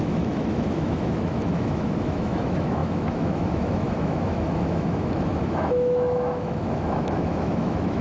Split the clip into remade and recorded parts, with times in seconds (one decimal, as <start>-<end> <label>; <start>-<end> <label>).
0.0-8.0 remade